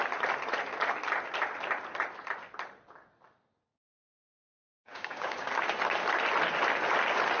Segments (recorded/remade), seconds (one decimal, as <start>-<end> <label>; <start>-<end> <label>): 0.0-3.7 recorded; 3.7-5.5 remade; 5.5-7.4 recorded